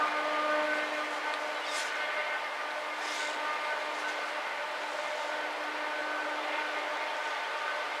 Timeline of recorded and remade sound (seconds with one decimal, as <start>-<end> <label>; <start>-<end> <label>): 0.0-8.0 recorded